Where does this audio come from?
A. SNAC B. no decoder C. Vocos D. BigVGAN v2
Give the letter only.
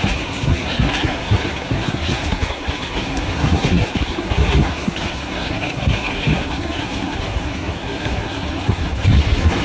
A